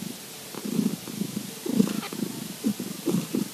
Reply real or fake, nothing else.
real